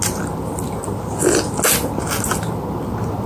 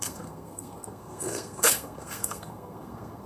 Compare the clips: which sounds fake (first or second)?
second